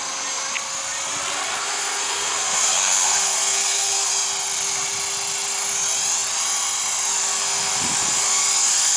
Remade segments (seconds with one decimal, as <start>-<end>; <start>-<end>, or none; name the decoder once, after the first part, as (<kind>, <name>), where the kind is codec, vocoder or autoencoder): 1.5-4.1 (codec, SNAC)